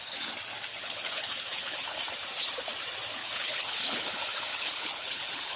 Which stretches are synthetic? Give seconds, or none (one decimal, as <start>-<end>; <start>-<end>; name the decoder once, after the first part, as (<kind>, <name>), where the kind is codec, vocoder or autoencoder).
0.7-2.0 (codec, HILCodec); 3.2-4.1; 4.5-5.6